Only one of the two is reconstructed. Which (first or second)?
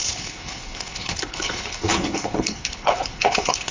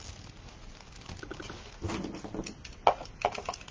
first